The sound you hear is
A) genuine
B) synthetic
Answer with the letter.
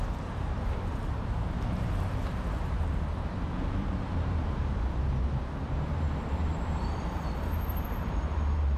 B